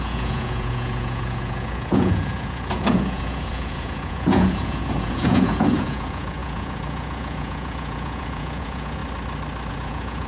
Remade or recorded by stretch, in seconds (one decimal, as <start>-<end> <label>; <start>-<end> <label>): 0.0-9.0 remade; 9.0-9.7 recorded; 9.7-10.3 remade